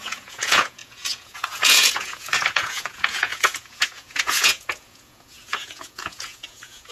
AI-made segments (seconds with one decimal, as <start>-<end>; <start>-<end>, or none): 0.0-6.9